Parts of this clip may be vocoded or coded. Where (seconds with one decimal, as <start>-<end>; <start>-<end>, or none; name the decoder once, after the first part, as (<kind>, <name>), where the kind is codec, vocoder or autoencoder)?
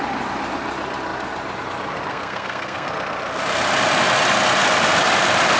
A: 2.1-2.9 (codec, SNAC)